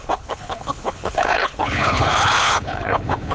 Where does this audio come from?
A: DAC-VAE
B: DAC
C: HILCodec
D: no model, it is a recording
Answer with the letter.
C